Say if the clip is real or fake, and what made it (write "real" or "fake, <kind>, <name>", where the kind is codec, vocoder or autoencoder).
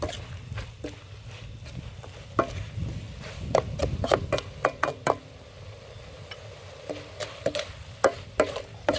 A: real